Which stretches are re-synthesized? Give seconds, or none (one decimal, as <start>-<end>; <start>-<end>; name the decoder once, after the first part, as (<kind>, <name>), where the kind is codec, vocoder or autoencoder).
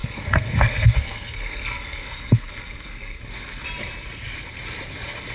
0.0-3.2 (codec, SNAC)